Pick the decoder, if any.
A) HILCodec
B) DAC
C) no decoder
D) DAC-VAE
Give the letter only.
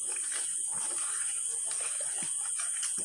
C